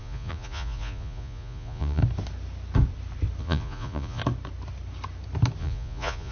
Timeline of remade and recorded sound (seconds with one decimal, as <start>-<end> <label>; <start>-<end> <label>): 0.0-2.0 remade; 2.0-3.4 recorded; 3.4-4.2 remade; 4.2-5.6 recorded; 5.6-6.3 remade